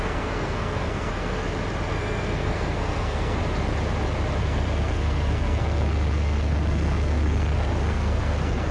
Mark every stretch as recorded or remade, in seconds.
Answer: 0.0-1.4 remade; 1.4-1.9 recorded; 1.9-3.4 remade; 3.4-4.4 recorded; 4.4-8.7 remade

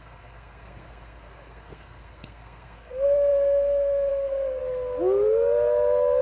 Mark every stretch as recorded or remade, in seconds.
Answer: 0.0-4.6 remade; 4.6-6.2 recorded

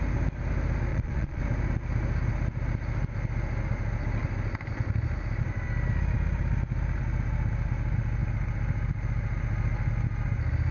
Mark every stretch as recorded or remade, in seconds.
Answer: 0.0-0.9 recorded; 0.9-1.4 remade; 1.4-10.7 recorded

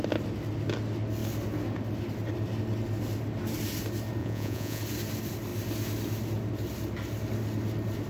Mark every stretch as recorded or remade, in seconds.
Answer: 0.0-4.2 recorded; 4.2-4.8 remade; 4.8-8.1 recorded